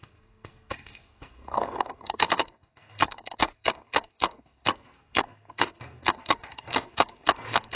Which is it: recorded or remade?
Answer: remade